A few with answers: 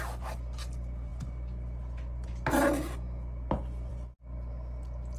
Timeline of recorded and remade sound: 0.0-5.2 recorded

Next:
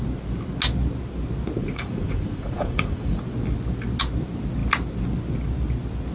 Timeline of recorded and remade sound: 0.0-1.6 recorded; 1.6-3.2 remade; 3.2-6.1 recorded

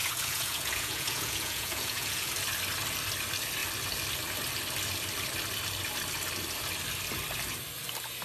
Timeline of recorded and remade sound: 0.0-2.3 remade; 2.3-8.2 recorded

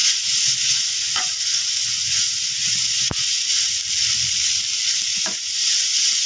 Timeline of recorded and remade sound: 0.0-3.8 remade; 3.8-5.1 recorded; 5.1-6.3 remade

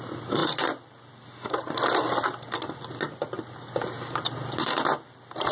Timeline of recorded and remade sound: 0.0-5.5 recorded